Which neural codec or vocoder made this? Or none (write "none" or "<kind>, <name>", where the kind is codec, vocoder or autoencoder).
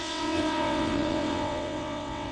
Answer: vocoder, WaveNeXt